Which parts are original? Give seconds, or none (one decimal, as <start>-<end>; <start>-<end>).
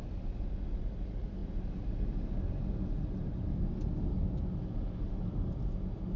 0.0-6.2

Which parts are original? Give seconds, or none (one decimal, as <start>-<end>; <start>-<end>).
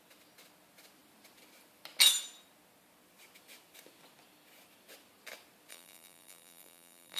0.0-5.7